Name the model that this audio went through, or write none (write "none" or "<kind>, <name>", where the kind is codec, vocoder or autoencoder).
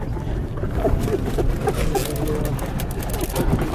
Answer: none